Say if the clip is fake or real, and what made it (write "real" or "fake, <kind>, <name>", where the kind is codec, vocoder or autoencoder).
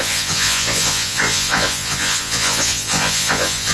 fake, vocoder, Vocos